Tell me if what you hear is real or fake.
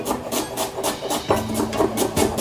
real